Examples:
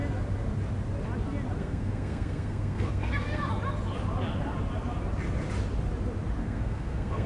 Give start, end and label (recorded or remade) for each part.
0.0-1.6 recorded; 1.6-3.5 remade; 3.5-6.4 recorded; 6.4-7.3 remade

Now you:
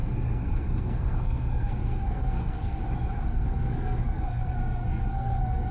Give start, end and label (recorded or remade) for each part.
0.0-2.8 remade; 2.8-3.3 recorded; 3.3-5.7 remade

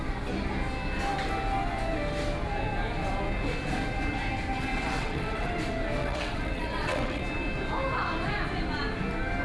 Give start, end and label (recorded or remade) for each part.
0.0-4.7 recorded; 4.7-5.5 remade; 5.5-6.0 recorded; 6.0-7.2 remade; 7.2-9.4 recorded

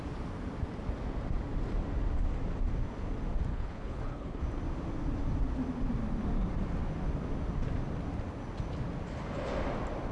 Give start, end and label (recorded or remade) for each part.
0.0-3.5 recorded; 3.5-4.4 remade; 4.4-10.1 recorded

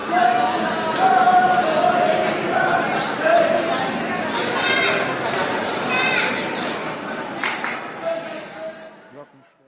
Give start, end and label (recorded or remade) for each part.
0.0-9.7 recorded

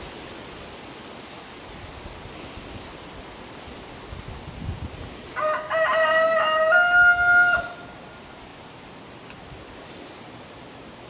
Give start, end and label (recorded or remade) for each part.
0.0-11.1 recorded

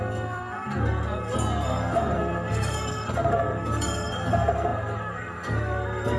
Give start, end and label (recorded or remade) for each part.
0.0-6.2 remade